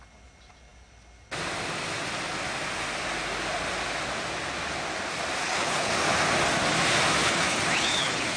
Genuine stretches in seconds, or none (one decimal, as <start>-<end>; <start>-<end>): 0.0-5.4; 5.9-7.2